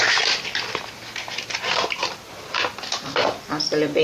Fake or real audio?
real